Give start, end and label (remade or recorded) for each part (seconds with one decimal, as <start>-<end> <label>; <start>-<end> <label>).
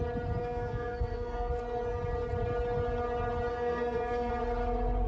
0.0-0.4 recorded; 0.4-1.6 remade; 1.6-3.5 recorded; 3.5-4.3 remade; 4.3-5.1 recorded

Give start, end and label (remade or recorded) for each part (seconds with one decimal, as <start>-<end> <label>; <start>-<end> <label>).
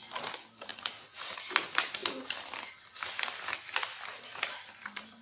0.0-0.7 recorded; 0.7-1.3 remade; 1.3-5.2 recorded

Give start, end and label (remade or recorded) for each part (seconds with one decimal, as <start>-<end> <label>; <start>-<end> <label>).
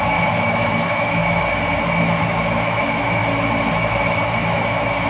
0.0-1.2 remade; 1.2-2.0 recorded; 2.0-3.2 remade; 3.2-3.7 recorded; 3.7-5.1 remade